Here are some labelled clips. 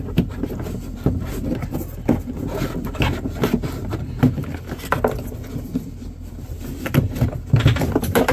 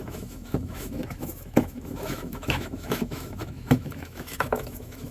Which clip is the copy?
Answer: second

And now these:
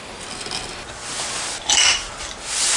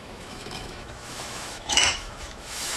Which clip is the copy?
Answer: second